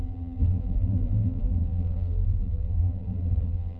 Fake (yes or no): yes